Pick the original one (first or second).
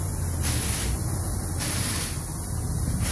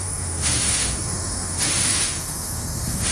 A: first